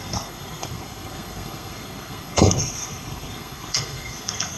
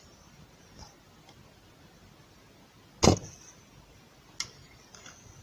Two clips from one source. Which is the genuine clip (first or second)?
second